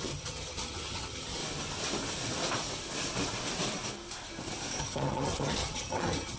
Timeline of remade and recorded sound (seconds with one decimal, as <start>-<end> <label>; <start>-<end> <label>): 0.0-1.4 remade; 1.4-4.8 recorded; 4.8-6.4 remade